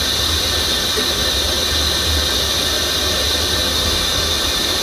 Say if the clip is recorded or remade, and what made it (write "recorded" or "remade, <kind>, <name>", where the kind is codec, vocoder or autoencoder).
recorded